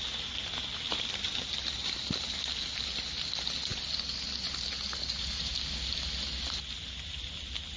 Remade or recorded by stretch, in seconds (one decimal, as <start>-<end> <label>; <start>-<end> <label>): 0.0-7.8 recorded